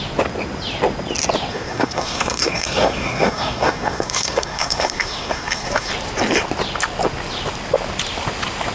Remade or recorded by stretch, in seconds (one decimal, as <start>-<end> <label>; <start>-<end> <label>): 0.0-1.5 recorded; 1.5-5.9 remade; 5.9-8.7 recorded